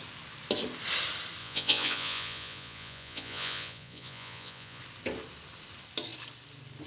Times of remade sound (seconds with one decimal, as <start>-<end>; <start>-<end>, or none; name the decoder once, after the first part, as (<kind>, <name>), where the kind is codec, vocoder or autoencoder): 1.4-4.8 (vocoder, Vocos)